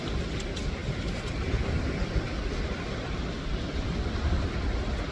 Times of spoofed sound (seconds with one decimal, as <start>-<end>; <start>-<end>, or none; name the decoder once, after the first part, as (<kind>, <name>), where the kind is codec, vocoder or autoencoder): none